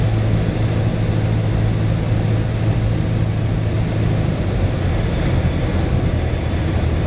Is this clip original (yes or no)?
yes